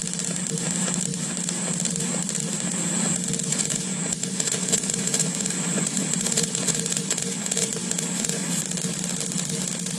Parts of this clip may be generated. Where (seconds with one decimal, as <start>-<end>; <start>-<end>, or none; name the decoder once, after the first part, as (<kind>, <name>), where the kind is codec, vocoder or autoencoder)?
3.5-8.5 (vocoder, Vocos)